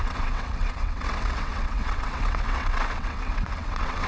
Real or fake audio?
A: fake